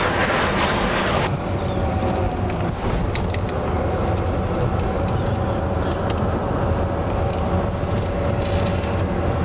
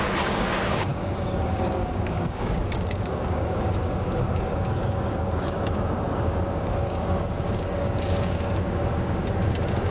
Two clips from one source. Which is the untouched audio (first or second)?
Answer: first